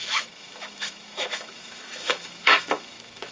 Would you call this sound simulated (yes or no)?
yes